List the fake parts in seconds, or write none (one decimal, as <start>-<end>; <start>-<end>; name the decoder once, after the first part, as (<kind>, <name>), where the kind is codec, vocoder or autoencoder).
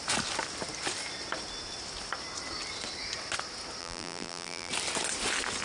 3.8-4.7 (vocoder, BigVGAN v2)